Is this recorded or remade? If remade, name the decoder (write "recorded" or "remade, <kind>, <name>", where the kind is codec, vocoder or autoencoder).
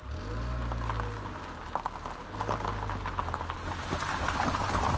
recorded